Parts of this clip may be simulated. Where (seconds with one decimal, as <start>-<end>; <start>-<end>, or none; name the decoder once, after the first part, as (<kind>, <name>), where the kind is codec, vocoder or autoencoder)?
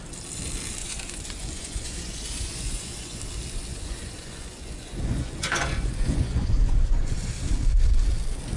0.8-3.2 (vocoder, Vocos); 3.7-7.3